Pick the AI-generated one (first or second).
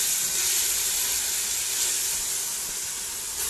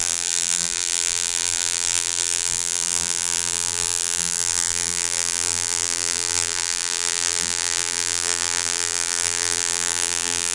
second